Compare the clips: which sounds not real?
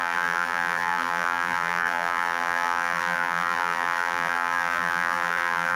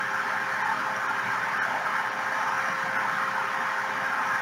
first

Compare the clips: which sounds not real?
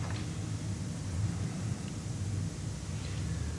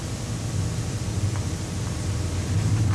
second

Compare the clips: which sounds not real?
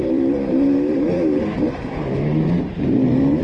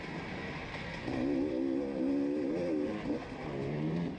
first